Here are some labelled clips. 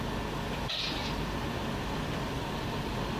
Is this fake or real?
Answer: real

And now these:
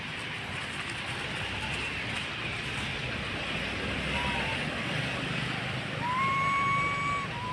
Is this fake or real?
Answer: real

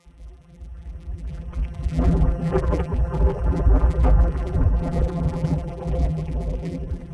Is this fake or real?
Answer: fake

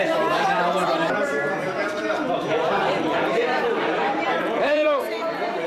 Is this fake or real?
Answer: fake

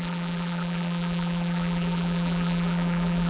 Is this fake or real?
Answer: fake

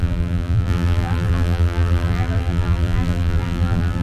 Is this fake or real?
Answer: fake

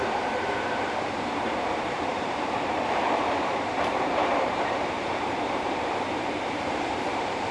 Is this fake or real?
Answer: fake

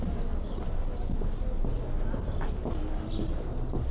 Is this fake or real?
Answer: real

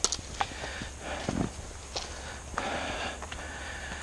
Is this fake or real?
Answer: real